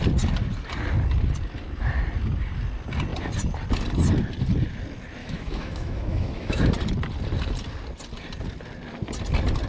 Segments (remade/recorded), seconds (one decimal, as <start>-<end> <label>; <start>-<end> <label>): 0.0-5.2 recorded; 5.2-6.7 remade; 6.7-9.7 recorded